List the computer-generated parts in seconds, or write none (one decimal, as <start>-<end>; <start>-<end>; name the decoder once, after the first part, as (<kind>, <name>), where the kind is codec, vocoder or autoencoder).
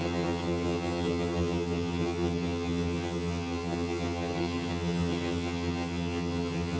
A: 0.0-6.8 (vocoder, HiFi-GAN)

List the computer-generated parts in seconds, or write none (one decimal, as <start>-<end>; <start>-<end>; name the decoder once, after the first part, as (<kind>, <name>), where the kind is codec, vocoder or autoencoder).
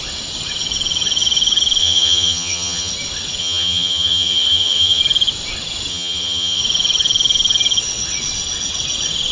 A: 1.8-2.9 (vocoder, HiFi-GAN); 3.4-5.0; 5.9-6.6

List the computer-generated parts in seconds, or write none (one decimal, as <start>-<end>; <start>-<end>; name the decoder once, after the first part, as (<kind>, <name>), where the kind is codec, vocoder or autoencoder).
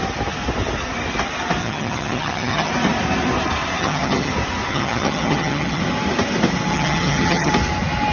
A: 1.6-2.7 (vocoder, HiFi-GAN); 3.8-4.3; 4.7-5.8; 6.7-7.5